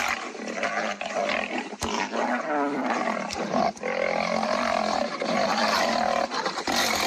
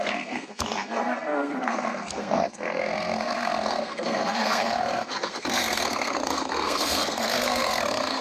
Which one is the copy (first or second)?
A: second